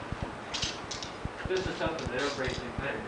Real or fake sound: real